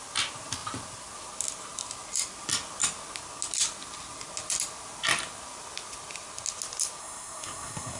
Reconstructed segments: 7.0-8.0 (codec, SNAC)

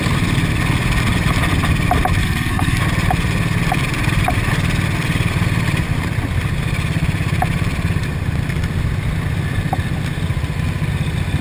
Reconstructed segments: 2.2-2.8 (codec, SNAC)

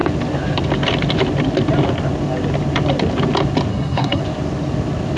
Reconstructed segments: 3.7-4.2 (codec, SNAC)

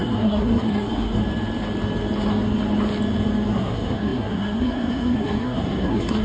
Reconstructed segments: 0.0-1.2 (codec, SNAC); 3.5-6.2

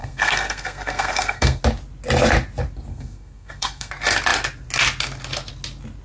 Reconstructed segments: 0.0-1.6 (codec, SNAC); 2.9-3.9

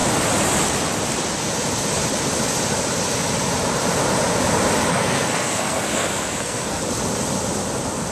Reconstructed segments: 4.9-6.8 (codec, SNAC)